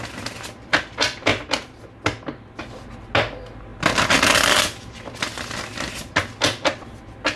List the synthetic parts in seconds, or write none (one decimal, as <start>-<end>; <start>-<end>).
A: none